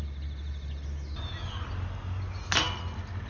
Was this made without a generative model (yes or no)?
yes